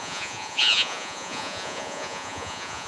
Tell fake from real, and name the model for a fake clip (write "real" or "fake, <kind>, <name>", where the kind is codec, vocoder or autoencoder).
fake, vocoder, Vocos